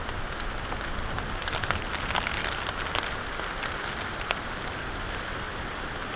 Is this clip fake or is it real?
real